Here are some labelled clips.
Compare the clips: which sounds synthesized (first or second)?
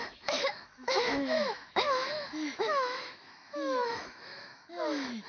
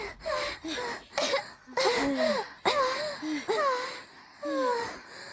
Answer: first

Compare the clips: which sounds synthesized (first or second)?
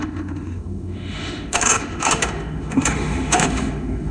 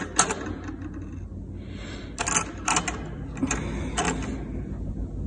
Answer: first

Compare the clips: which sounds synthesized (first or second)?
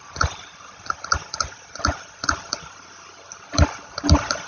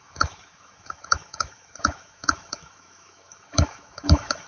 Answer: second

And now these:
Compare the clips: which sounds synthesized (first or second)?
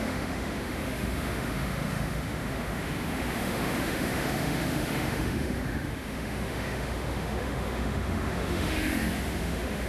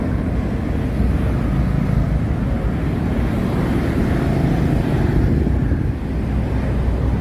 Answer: first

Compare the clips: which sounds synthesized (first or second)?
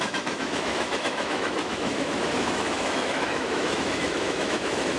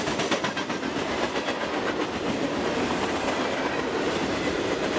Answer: first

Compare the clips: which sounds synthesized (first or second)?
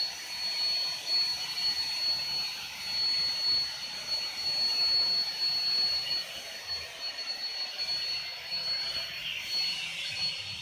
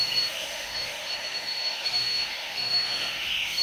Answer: second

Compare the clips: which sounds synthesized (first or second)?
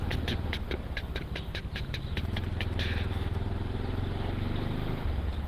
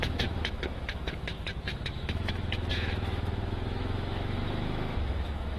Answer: second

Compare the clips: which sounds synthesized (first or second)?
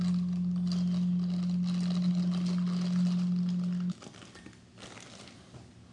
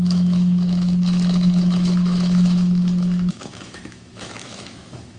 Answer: second